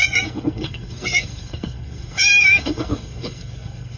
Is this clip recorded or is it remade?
remade